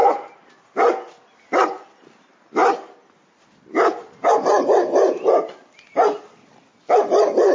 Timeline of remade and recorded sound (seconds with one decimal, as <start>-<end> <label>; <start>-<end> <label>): 0.0-7.5 recorded